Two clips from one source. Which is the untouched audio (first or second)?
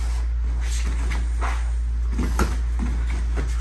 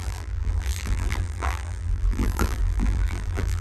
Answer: first